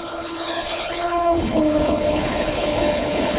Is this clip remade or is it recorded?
remade